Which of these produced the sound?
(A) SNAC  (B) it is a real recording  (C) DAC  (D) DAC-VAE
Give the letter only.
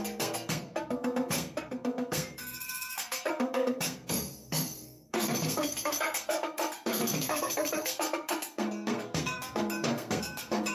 A